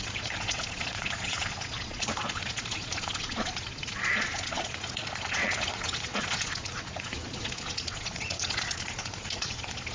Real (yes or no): no